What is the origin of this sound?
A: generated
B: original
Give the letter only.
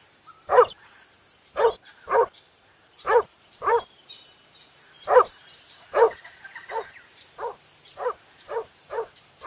A